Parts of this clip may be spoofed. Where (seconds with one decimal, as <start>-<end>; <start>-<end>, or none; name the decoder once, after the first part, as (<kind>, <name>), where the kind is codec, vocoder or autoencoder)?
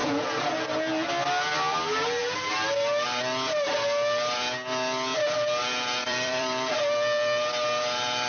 0.0-0.5 (vocoder, BigVGAN v2); 2.2-3.2; 6.0-6.8